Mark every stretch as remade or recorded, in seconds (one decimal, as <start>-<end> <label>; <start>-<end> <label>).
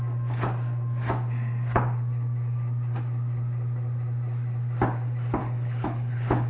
0.0-5.4 recorded; 5.4-6.5 remade